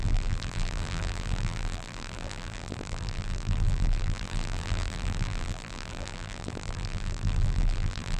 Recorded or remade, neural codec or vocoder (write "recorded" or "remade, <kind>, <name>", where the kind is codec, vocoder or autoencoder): remade, vocoder, BigVGAN v2